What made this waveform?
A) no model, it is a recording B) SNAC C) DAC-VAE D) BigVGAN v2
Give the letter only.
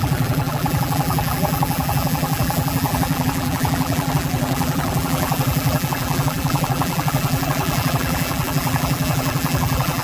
D